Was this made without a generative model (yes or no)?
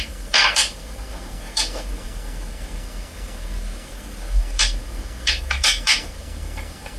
no